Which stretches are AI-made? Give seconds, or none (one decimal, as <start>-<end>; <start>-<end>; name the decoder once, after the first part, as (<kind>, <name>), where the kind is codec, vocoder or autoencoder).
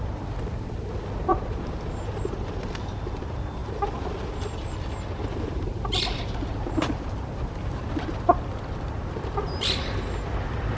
none